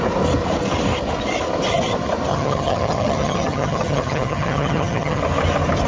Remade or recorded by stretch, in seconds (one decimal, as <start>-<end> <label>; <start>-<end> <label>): 0.0-2.3 recorded; 2.3-5.2 remade; 5.2-5.9 recorded